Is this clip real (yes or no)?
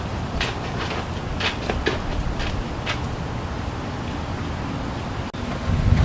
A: yes